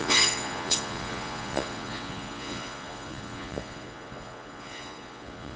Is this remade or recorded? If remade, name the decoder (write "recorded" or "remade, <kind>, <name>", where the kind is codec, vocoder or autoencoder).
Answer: remade, vocoder, Vocos